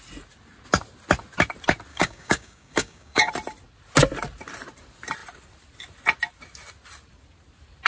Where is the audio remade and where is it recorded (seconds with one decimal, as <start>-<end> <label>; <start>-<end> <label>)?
0.0-1.9 recorded; 1.9-3.3 remade; 3.3-7.9 recorded